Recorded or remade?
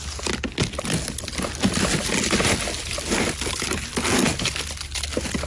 recorded